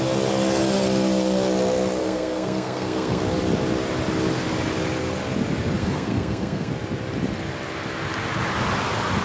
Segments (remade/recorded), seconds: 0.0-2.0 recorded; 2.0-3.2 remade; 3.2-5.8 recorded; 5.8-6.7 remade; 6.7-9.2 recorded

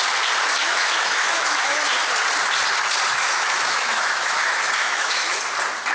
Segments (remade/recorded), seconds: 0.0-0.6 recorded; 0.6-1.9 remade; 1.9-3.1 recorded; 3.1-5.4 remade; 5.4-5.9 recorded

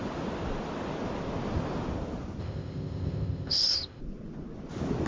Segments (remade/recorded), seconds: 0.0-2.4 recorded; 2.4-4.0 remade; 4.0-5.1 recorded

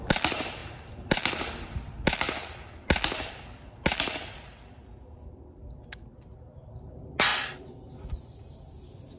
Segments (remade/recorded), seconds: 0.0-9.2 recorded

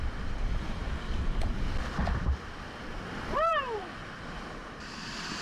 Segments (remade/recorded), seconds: 0.0-5.4 recorded

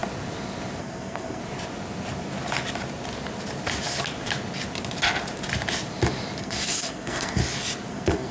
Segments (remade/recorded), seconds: 0.0-0.8 recorded; 0.8-1.4 remade; 1.4-6.4 recorded; 6.4-7.4 remade; 7.4-7.9 recorded; 7.9-8.3 remade

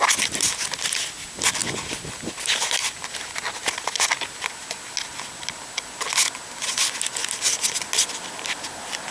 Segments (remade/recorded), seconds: 0.0-9.1 recorded

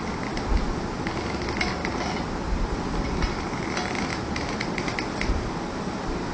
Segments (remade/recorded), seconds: 0.0-6.3 recorded